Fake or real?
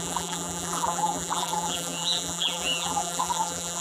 fake